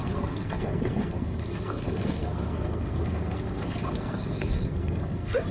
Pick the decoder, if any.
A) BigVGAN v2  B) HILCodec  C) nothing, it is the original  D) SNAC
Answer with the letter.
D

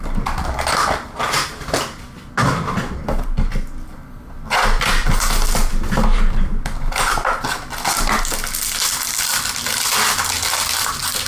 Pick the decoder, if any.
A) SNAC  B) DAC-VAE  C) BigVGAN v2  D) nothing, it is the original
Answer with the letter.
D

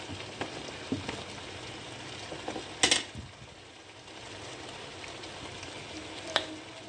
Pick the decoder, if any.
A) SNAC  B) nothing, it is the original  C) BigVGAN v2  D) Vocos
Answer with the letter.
B